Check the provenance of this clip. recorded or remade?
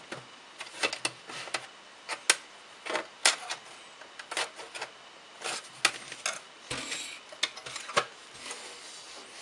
recorded